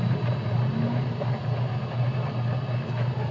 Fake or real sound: real